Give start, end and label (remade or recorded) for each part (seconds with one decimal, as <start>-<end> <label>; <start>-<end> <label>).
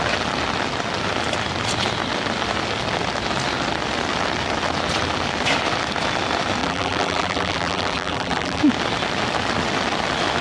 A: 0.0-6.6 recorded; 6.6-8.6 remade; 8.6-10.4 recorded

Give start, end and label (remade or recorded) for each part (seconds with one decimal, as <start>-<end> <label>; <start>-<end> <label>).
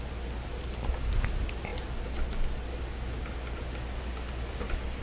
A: 0.0-5.0 recorded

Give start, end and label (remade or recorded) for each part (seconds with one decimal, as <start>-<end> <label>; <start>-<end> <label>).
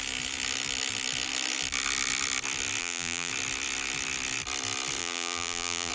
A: 0.0-2.8 recorded; 2.8-3.3 remade; 3.3-5.0 recorded; 5.0-5.9 remade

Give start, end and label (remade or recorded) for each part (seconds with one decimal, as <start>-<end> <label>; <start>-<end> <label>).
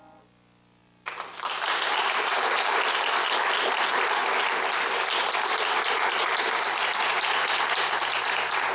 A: 0.0-0.8 recorded; 0.8-3.0 remade; 3.0-6.8 recorded; 6.8-7.9 remade; 7.9-8.7 recorded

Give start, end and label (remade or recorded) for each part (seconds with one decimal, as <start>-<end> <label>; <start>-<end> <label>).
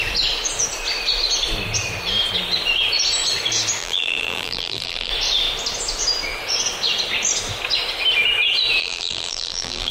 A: 0.0-3.8 recorded; 3.8-5.1 remade; 5.1-8.8 recorded; 8.8-9.9 remade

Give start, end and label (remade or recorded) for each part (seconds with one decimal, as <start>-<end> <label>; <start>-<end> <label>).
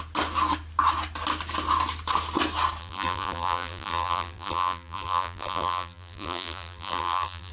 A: 0.0-2.8 recorded; 2.8-7.5 remade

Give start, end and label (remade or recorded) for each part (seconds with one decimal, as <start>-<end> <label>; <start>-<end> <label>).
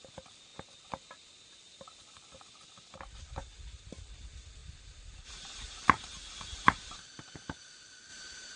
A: 0.0-4.6 recorded; 4.6-7.2 remade; 7.2-8.1 recorded; 8.1-8.6 remade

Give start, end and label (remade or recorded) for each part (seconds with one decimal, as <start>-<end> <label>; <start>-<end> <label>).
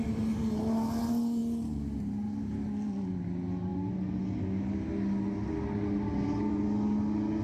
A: 0.0-7.4 recorded